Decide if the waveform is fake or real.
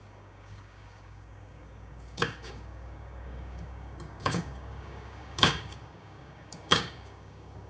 fake